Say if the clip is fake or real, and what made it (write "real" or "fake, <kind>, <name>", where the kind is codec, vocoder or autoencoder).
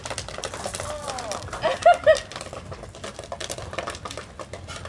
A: real